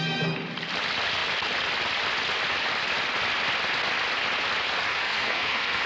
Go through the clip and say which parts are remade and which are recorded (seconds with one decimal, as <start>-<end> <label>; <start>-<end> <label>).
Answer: 0.0-4.9 recorded; 4.9-5.9 remade